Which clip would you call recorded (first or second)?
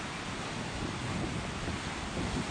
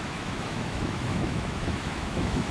first